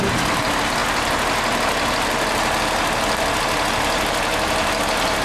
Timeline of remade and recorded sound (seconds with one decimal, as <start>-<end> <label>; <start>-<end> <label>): 0.0-5.2 recorded